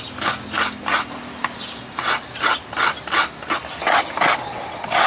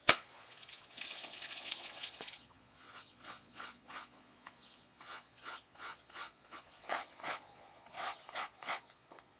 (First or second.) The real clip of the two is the first